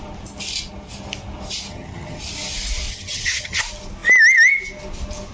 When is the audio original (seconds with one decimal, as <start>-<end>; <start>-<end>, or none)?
0.0-1.7; 2.2-2.9; 3.6-5.3